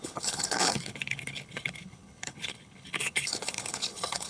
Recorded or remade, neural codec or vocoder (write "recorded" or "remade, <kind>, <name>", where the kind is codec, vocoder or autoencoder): remade, codec, HILCodec